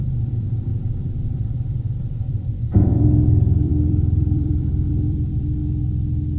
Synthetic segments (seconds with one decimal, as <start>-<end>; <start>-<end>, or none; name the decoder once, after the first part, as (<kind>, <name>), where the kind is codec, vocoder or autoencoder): 0.0-5.6 (vocoder, BigVGAN v2)